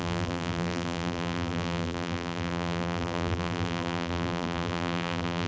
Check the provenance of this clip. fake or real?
fake